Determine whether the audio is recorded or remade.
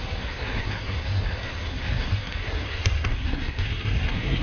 remade